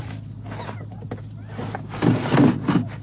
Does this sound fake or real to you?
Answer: real